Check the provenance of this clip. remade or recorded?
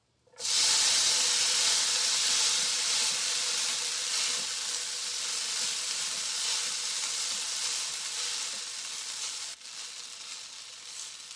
recorded